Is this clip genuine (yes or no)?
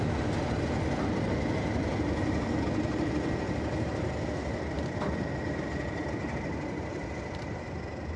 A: yes